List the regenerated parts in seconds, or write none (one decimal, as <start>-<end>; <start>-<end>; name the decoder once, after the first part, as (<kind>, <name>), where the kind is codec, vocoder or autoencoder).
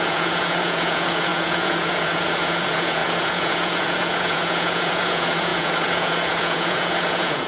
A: 0.0-7.5 (vocoder, Vocos)